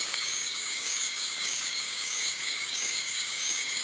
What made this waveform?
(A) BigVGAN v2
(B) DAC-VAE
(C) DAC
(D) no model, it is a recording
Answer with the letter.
C